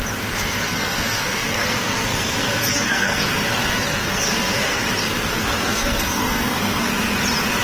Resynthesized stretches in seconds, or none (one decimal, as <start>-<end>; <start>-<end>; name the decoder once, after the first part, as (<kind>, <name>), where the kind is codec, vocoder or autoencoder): 0.7-3.3 (codec, SNAC); 4.0-4.8; 5.3-6.9